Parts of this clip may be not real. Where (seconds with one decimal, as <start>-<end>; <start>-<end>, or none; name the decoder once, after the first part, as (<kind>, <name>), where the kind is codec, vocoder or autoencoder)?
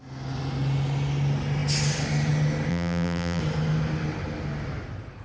2.7-3.4 (vocoder, BigVGAN v2)